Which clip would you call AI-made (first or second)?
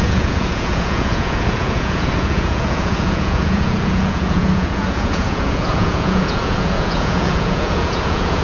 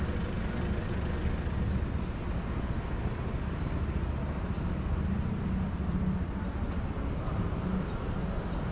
first